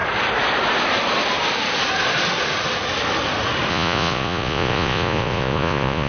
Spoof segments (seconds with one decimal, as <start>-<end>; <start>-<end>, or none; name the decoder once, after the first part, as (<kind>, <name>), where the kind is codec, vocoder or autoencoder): 3.7-6.1 (vocoder, Vocos)